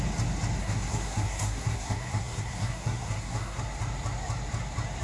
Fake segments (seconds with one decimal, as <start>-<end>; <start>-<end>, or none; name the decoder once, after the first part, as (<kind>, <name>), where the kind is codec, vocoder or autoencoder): 0.6-3.6 (codec, SNAC)